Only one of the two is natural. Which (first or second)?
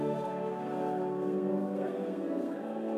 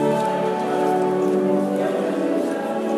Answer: second